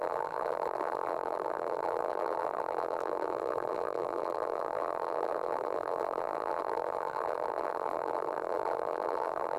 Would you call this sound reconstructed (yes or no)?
yes